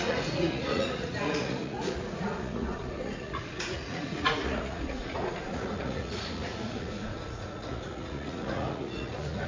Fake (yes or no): yes